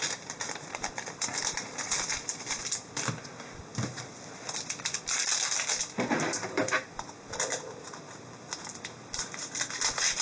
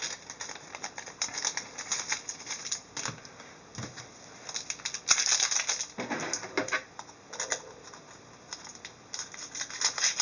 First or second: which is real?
second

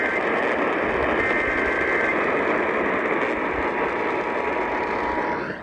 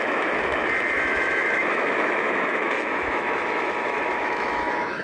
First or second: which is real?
first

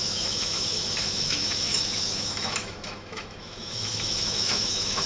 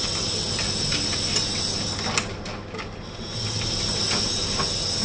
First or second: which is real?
second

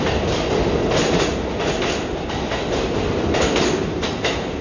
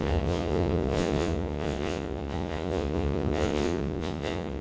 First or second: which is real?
first